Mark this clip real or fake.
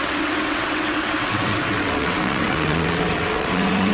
fake